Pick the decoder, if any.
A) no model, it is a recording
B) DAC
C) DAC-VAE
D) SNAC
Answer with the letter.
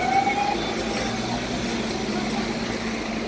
A